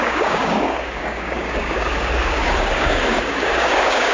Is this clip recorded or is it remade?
remade